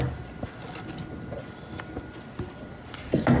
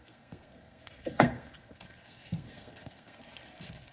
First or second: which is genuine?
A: first